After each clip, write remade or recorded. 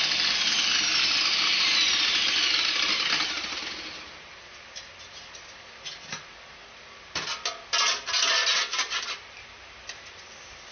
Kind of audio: recorded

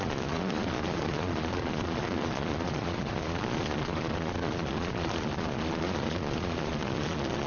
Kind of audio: remade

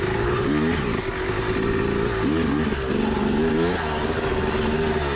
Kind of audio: recorded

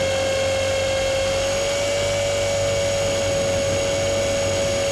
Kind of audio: recorded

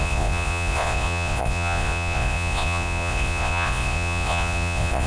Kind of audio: remade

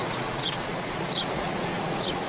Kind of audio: remade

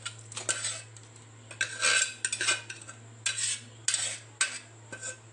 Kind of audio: recorded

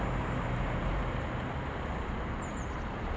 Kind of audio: remade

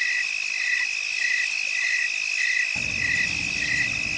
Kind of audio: recorded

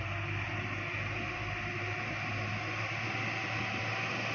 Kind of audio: recorded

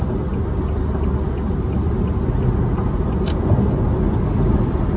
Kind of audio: recorded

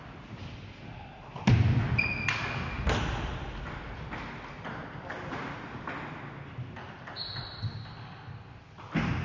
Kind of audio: recorded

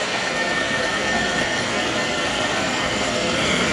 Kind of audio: remade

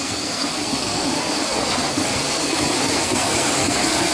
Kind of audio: remade